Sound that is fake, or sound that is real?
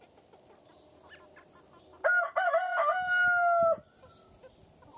real